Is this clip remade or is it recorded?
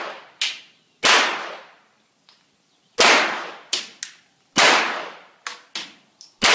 recorded